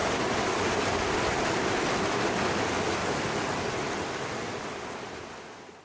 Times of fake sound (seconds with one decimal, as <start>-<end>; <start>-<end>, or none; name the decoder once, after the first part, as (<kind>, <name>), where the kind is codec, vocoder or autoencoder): none